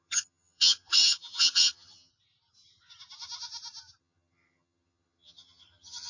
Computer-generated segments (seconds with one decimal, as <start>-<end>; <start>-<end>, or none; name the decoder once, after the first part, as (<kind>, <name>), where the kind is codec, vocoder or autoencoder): 0.0-2.1 (vocoder, HiFi-GAN); 4.0-6.1